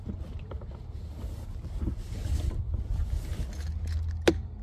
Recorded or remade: recorded